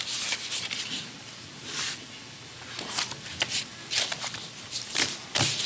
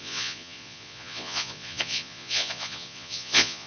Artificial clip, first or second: second